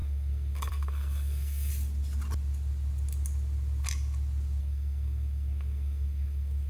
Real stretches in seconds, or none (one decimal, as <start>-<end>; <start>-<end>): 1.7-4.6